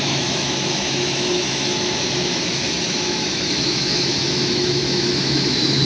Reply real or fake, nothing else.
fake